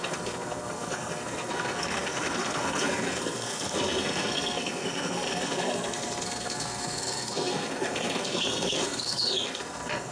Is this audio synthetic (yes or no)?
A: yes